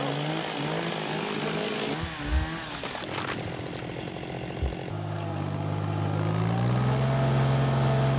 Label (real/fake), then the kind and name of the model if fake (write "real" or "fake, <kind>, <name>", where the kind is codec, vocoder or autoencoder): real